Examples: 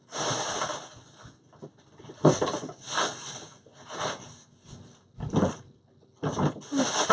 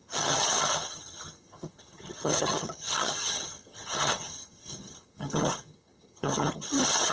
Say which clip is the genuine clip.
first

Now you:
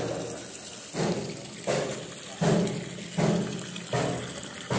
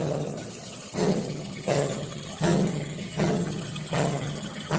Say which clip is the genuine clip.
first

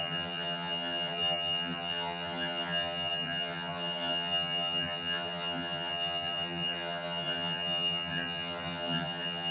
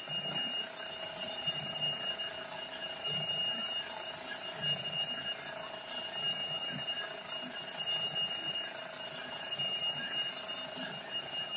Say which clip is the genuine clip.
second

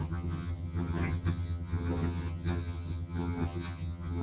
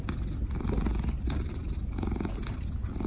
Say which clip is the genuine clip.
second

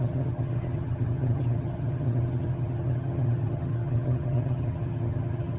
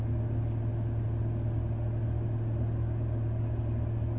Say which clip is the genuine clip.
second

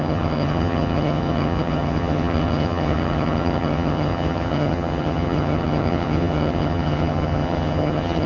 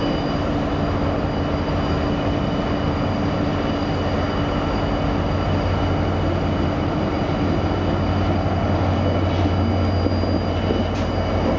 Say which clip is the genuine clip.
second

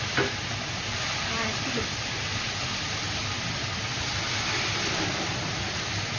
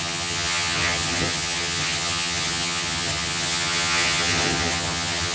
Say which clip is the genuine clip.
first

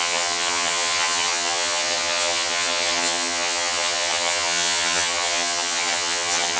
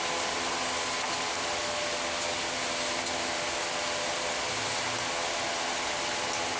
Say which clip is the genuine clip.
second